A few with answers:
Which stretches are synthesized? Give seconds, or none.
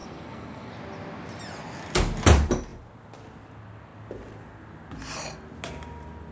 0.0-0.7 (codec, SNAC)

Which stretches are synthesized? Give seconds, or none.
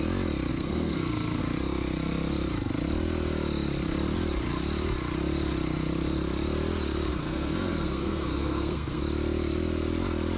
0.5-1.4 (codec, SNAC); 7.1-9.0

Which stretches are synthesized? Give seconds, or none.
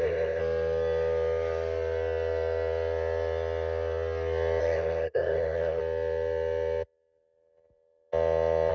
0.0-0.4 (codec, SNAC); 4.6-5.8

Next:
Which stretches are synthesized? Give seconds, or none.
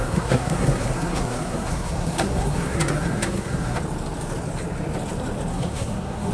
0.0-3.8 (codec, SNAC); 5.5-6.3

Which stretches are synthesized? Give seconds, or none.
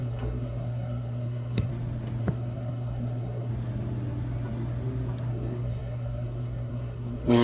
0.0-1.7 (codec, SNAC); 2.2-3.5; 5.3-7.4